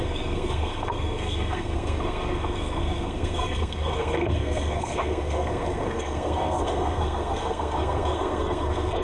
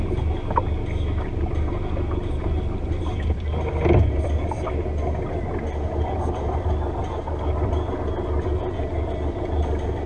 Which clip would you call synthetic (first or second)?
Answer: first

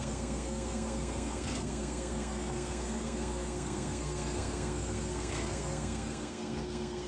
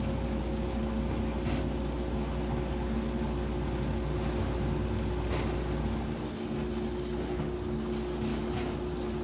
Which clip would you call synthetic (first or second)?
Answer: first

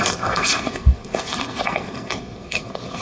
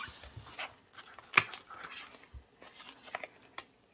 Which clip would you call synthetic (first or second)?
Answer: first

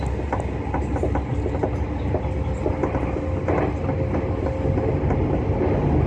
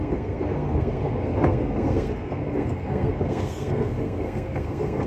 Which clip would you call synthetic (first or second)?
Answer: second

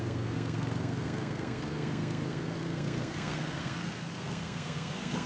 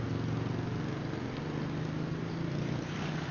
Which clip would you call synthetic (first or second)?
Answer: first